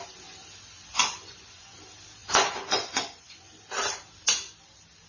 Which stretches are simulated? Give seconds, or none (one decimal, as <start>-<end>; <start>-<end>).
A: 1.0-1.8; 2.2-3.5